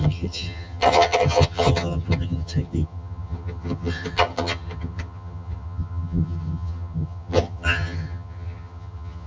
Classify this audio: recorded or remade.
remade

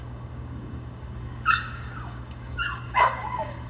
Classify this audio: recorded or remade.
remade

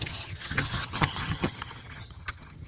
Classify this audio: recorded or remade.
remade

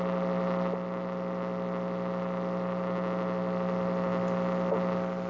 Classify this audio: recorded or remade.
recorded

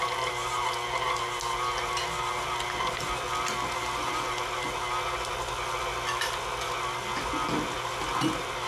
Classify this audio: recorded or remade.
recorded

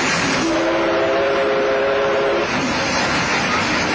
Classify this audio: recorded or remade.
recorded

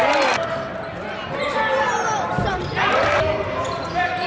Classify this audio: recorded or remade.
recorded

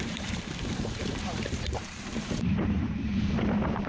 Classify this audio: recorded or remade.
remade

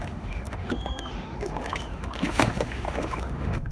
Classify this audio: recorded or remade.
remade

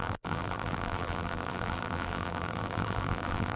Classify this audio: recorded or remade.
remade